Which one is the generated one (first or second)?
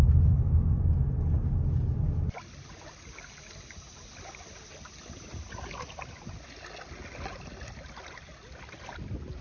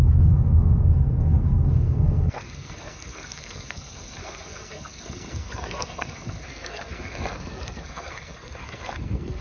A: second